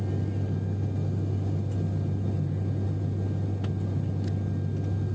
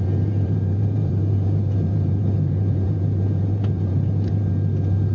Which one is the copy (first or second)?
second